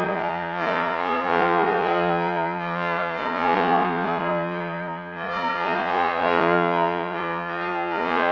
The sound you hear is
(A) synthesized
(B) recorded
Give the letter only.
A